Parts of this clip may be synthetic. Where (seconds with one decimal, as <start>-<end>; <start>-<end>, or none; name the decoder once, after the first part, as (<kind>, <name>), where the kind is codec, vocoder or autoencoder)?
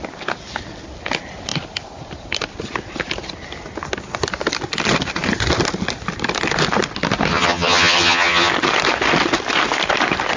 7.3-8.5 (vocoder, HiFi-GAN)